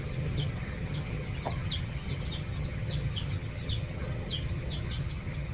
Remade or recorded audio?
remade